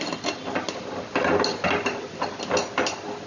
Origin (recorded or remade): recorded